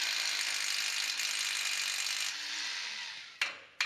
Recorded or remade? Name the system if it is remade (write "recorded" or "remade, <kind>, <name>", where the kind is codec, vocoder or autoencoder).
recorded